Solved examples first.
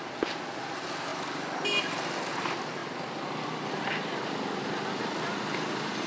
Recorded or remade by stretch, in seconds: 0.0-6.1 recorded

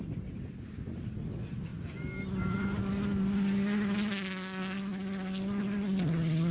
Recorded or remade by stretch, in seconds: 0.0-6.5 recorded

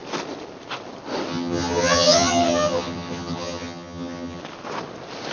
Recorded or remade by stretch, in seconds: 0.0-1.3 recorded; 1.3-4.4 remade; 4.4-5.3 recorded

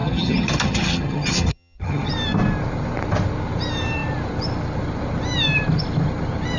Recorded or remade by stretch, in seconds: 0.0-2.1 remade; 2.1-6.6 recorded

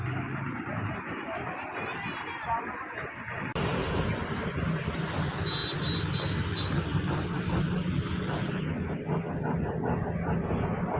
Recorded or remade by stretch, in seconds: 0.0-11.0 recorded

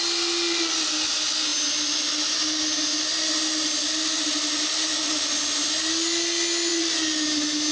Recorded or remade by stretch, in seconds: 0.0-7.7 recorded

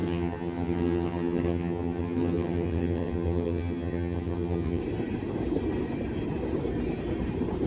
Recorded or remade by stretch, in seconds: 0.0-4.8 remade; 4.8-7.7 recorded